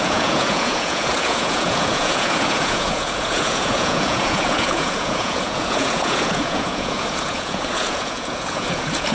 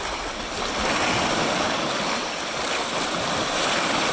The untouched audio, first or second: second